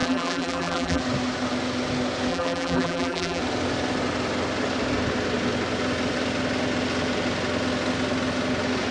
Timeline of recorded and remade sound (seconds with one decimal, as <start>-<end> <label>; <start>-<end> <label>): 0.0-1.0 remade; 1.0-2.3 recorded; 2.3-3.4 remade; 3.4-8.9 recorded